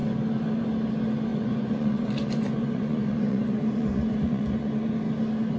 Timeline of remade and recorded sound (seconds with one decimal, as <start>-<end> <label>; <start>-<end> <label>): 0.0-1.3 recorded; 1.3-4.7 remade; 4.7-5.6 recorded

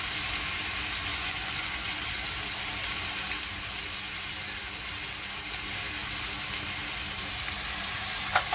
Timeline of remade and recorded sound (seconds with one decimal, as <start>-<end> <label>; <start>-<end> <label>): 0.0-1.1 recorded; 1.1-2.0 remade; 2.0-8.5 recorded

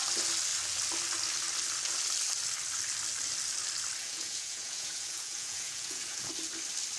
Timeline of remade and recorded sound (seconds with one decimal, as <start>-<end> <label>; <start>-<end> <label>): 0.0-4.0 recorded; 4.0-6.3 remade; 6.3-7.0 recorded

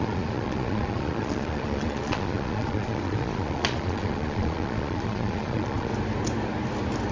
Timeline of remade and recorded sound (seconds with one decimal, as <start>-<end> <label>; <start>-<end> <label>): 0.0-5.9 remade; 5.9-7.1 recorded